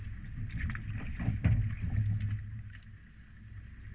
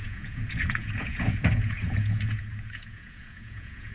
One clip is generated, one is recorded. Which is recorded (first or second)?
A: first